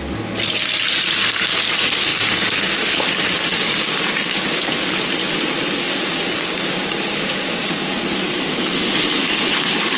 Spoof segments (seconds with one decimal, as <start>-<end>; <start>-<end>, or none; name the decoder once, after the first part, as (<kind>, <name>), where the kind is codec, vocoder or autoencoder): 2.1-4.6 (codec, DAC); 5.8-7.9